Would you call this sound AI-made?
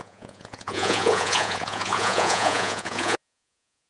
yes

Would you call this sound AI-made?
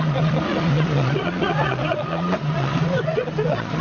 yes